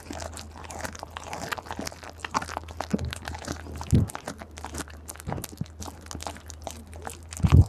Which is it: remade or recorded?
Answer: recorded